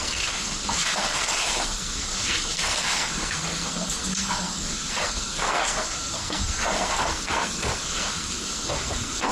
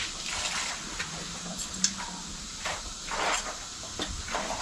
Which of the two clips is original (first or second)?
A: second